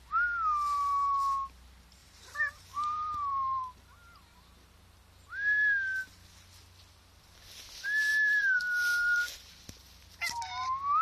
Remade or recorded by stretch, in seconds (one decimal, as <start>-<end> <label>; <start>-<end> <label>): 0.0-2.0 recorded; 2.0-3.6 remade; 3.6-8.1 recorded; 8.1-8.6 remade; 8.6-11.0 recorded